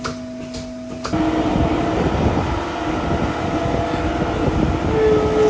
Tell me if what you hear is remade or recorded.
recorded